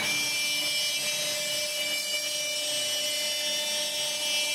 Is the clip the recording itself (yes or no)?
yes